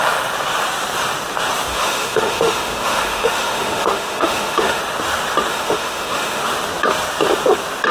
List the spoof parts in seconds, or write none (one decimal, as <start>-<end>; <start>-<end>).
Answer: 1.7-4.8; 5.5-6.4